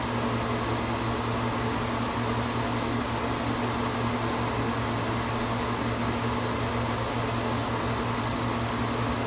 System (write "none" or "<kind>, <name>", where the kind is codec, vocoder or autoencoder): none